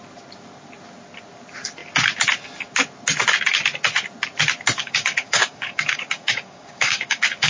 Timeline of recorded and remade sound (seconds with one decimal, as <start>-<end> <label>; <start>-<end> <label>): 0.0-4.8 recorded; 4.8-7.5 remade